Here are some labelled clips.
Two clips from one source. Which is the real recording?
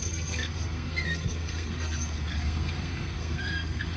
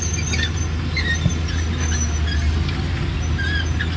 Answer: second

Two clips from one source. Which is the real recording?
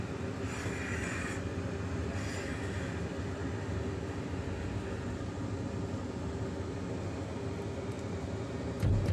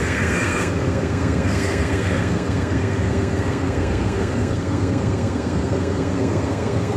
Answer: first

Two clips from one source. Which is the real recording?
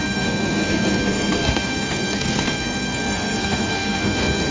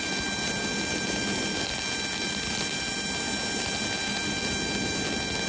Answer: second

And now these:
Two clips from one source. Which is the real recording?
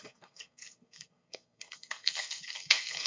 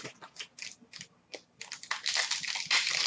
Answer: second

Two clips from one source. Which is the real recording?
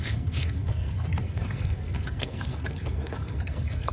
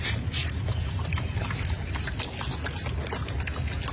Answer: second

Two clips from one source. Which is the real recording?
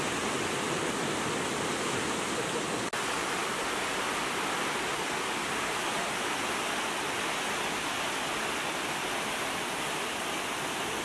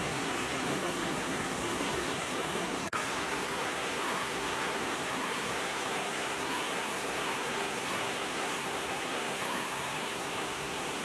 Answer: first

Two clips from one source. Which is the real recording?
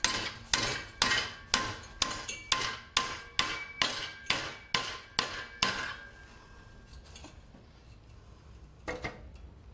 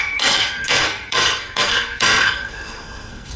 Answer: first